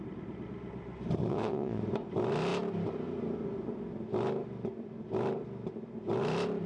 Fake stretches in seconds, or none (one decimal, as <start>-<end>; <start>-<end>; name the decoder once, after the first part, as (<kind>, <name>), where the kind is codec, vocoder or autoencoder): 1.3-1.8 (vocoder, WaveNeXt)